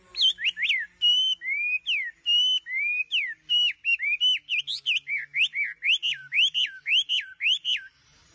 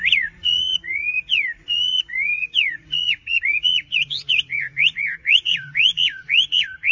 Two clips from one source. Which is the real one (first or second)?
first